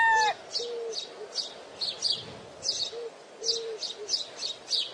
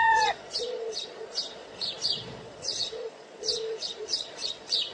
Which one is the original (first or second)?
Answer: first